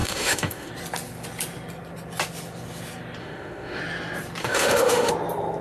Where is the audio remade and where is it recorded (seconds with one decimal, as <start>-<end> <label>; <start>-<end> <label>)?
0.0-0.7 remade; 0.7-3.2 recorded; 3.2-3.8 remade; 3.8-4.4 recorded; 4.4-5.1 remade; 5.1-5.6 recorded

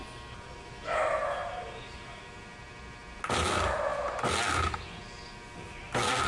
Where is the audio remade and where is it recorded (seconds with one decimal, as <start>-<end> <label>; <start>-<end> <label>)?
0.0-6.3 recorded

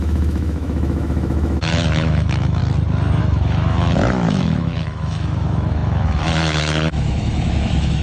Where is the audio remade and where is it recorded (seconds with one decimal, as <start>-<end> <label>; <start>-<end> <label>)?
0.0-2.6 remade; 2.6-3.2 recorded; 3.2-8.0 remade

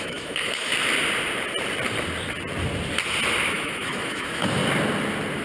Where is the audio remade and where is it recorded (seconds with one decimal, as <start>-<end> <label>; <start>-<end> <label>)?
0.0-0.7 remade; 0.7-3.5 recorded; 3.5-4.6 remade; 4.6-5.4 recorded

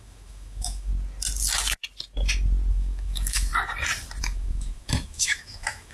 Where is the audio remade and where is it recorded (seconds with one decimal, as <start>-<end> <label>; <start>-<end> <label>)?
0.0-0.9 remade; 0.9-2.7 recorded; 2.7-3.5 remade; 3.5-4.2 recorded; 4.2-5.9 remade

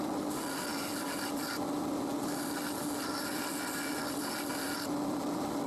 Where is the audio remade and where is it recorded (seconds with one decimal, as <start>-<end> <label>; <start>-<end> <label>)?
0.0-5.7 recorded